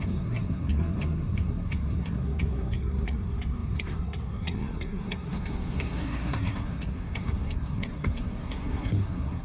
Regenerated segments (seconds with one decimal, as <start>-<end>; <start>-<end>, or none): 0.0-9.4

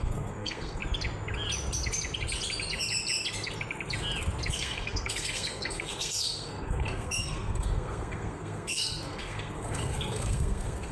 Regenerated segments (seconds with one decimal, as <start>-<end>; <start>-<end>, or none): 0.0-0.8; 4.5-10.9